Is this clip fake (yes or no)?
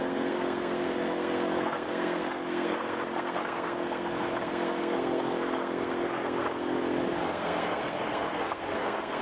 yes